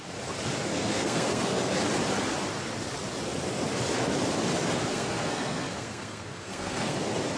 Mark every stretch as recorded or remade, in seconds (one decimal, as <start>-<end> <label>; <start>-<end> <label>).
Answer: 0.0-0.7 recorded; 0.7-1.8 remade; 1.8-4.9 recorded; 4.9-7.0 remade; 7.0-7.4 recorded